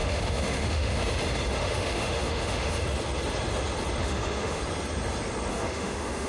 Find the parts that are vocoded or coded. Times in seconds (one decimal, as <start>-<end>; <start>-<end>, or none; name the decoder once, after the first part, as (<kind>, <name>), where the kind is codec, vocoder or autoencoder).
0.0-1.0 (autoencoder, DAC-VAE); 1.6-2.8; 4.0-4.6; 5.5-6.3